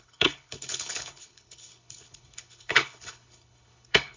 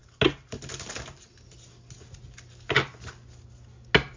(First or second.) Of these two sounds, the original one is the second